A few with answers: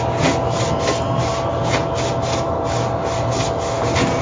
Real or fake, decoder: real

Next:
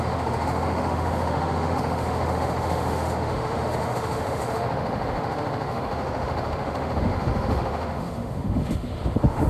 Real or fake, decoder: fake, autoencoder, DAC-VAE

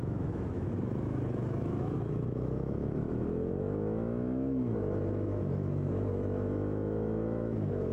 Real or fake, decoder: fake, autoencoder, DAC-VAE